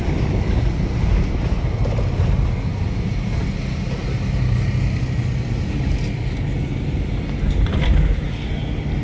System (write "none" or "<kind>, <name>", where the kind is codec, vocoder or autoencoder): none